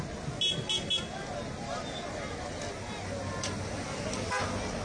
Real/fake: real